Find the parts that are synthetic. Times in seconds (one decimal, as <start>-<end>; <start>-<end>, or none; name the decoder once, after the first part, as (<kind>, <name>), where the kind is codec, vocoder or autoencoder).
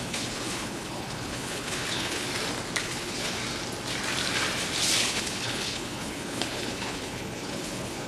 0.0-2.3 (codec, HILCodec); 2.8-3.4; 5.0-8.1